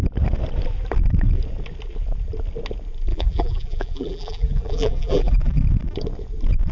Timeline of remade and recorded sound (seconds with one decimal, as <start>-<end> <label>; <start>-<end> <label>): 0.0-3.1 recorded; 3.1-5.6 remade; 5.6-6.7 recorded